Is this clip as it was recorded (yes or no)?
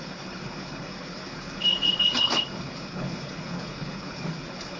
no